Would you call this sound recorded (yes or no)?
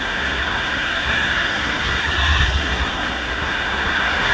no